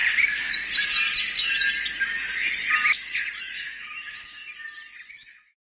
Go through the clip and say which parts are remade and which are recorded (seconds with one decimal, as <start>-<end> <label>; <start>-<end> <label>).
0.0-3.4 recorded; 3.4-4.4 remade; 4.4-5.1 recorded; 5.1-5.7 remade